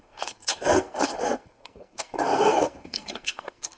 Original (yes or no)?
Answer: no